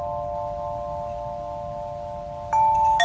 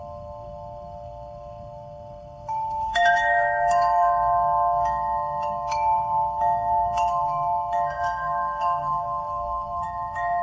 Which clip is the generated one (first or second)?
second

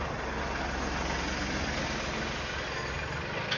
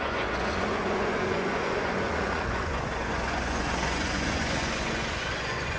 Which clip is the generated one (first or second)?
second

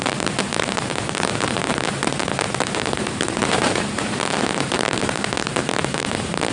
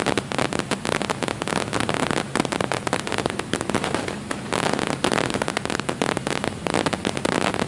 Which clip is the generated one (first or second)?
first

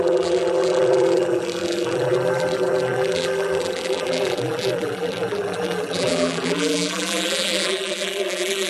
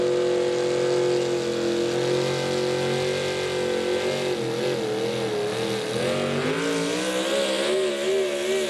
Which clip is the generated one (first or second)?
first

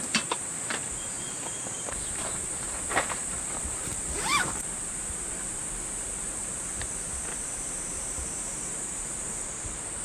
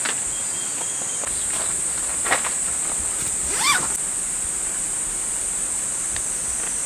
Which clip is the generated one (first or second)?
first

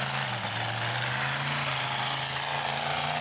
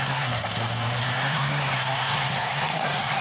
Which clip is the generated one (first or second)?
second